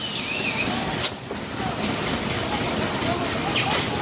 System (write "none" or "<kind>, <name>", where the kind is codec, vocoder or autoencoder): none